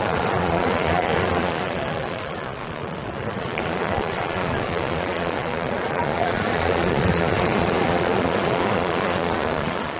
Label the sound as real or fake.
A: fake